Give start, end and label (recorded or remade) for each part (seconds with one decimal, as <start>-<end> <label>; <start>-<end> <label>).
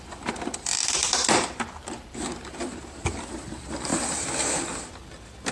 0.0-3.9 remade; 3.9-5.5 recorded